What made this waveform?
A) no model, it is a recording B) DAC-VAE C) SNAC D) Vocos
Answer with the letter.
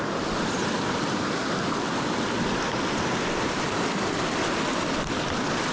A